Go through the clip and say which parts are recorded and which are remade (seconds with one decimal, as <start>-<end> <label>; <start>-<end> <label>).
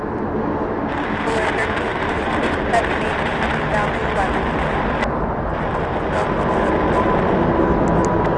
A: 0.0-1.9 recorded; 1.9-3.4 remade; 3.4-8.4 recorded